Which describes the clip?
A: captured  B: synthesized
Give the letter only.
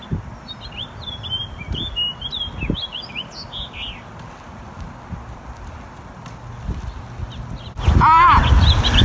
A